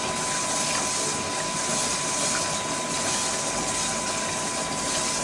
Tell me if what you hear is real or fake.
real